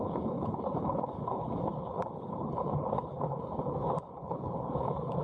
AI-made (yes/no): yes